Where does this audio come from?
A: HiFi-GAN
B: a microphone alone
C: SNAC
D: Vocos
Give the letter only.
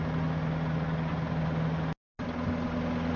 B